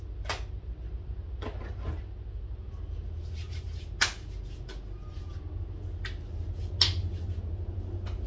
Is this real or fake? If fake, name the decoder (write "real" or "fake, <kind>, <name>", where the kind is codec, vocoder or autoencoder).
real